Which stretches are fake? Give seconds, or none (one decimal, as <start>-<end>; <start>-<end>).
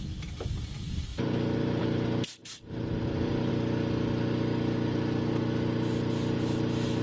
1.1-1.8; 2.4-3.5